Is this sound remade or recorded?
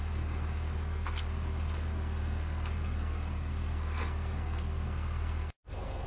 remade